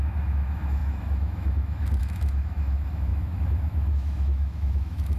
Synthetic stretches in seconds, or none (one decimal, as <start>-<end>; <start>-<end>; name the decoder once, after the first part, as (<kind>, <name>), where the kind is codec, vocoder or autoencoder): 0.0-5.2 (autoencoder, DAC-VAE)